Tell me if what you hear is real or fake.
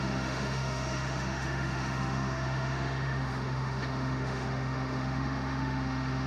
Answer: fake